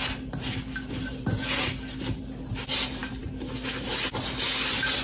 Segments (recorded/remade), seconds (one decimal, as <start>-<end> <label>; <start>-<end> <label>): 0.0-5.0 recorded